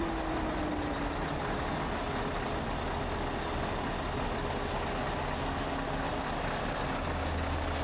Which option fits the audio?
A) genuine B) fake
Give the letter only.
A